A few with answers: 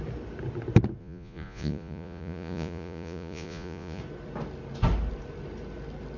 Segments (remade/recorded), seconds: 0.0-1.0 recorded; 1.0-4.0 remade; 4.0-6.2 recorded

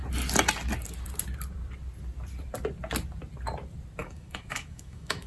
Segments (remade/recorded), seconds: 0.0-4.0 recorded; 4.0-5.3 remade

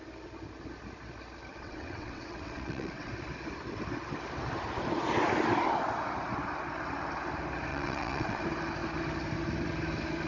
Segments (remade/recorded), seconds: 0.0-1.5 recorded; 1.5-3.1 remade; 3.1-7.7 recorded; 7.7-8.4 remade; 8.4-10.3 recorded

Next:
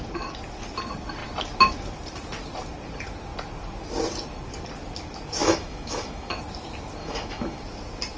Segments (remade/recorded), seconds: 0.0-5.4 recorded; 5.4-6.4 remade; 6.4-7.0 recorded; 7.0-7.6 remade; 7.6-8.2 recorded

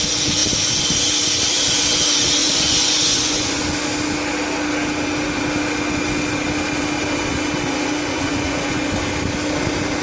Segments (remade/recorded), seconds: 0.0-2.4 recorded; 2.4-3.6 remade; 3.6-8.1 recorded; 8.1-8.8 remade; 8.8-10.0 recorded

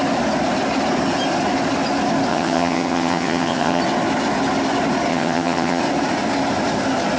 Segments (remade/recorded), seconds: 0.0-2.3 recorded; 2.3-3.8 remade; 3.8-5.1 recorded; 5.1-5.8 remade; 5.8-7.2 recorded